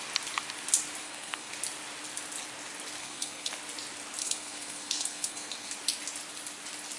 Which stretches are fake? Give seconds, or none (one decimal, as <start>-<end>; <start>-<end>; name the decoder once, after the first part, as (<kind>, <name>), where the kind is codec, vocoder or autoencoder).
1.0-1.5 (codec, SNAC); 3.0-3.5; 4.2-5.7